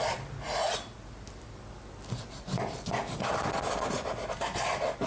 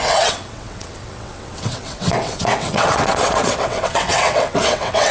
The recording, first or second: first